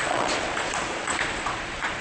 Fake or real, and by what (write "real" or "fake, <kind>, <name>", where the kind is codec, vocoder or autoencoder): fake, vocoder, Vocos